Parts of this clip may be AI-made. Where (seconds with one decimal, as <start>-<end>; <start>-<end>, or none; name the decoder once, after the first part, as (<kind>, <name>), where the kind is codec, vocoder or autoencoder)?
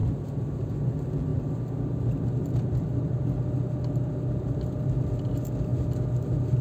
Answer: none